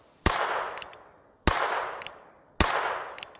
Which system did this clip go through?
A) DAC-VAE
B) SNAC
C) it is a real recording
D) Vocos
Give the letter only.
C